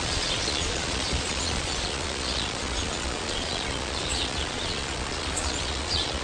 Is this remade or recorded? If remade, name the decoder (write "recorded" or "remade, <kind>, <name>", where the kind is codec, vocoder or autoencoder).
remade, vocoder, Vocos